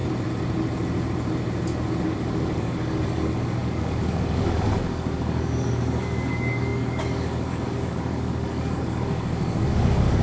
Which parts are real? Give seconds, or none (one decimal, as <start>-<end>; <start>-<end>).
0.0-2.0